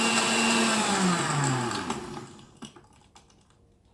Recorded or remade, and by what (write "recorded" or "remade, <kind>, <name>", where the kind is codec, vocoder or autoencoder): recorded